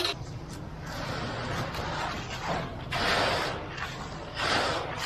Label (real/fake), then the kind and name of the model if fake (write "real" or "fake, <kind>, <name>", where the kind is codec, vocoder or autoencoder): real